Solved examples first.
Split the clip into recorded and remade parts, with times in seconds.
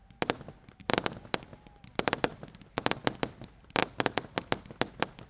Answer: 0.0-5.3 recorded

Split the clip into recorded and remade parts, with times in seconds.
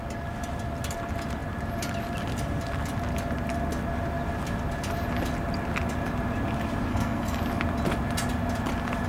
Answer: 0.0-6.9 recorded; 6.9-7.4 remade; 7.4-9.1 recorded